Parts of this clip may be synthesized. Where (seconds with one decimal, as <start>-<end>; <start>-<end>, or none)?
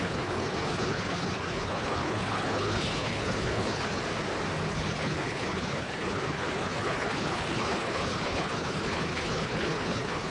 0.0-4.0; 4.7-10.3